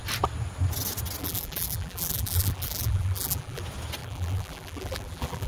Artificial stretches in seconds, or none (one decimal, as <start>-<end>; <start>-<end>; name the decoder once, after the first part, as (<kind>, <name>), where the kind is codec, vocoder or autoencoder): 1.2-3.6 (vocoder, BigVGAN v2); 4.0-5.5